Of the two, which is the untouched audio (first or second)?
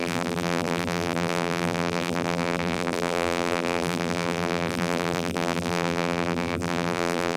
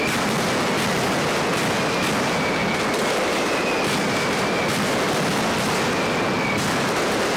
second